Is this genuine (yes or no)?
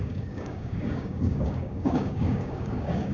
no